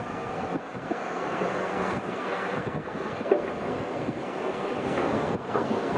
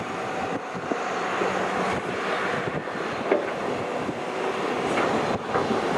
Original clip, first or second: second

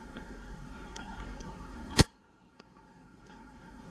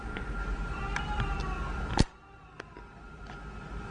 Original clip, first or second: second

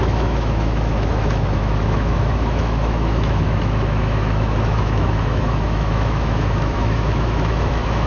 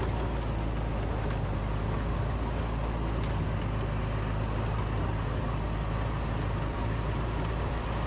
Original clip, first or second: second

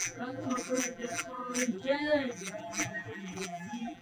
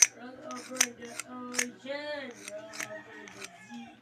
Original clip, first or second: second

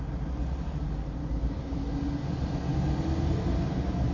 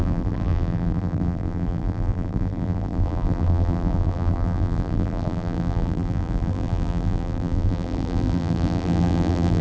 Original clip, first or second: first